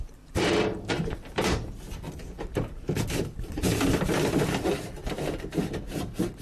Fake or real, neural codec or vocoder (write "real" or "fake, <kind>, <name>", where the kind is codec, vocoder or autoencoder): fake, vocoder, BigVGAN v2